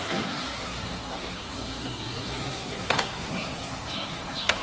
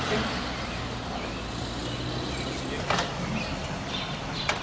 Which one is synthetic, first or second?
first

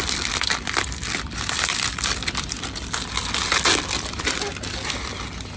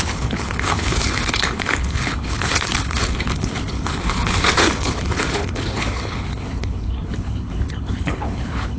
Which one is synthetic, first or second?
second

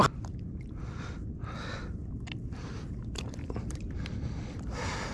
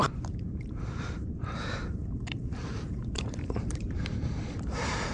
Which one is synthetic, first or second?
second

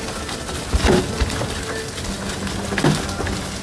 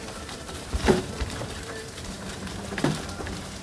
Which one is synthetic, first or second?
second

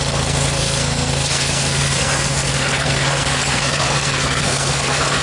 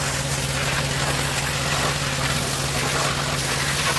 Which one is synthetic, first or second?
first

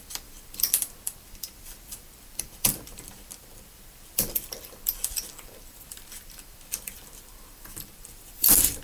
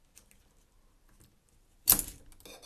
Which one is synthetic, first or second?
first